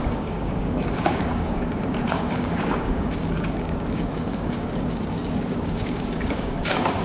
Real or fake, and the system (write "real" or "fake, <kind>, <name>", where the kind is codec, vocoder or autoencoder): fake, codec, DAC